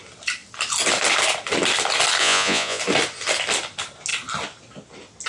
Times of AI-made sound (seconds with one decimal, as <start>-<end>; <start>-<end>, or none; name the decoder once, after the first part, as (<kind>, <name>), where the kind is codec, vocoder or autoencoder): 2.2-2.8 (vocoder, Vocos)